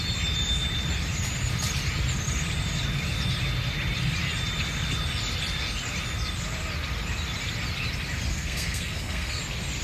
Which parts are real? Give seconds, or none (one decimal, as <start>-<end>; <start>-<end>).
0.0-8.3; 9.4-9.8